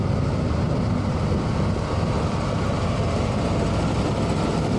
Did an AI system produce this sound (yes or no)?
no